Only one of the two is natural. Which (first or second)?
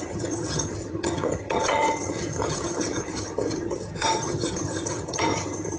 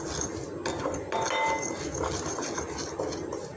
second